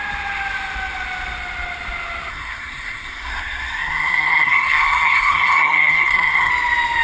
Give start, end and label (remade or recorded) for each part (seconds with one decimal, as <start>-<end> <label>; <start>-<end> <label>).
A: 0.0-2.3 recorded; 2.3-6.5 remade; 6.5-7.0 recorded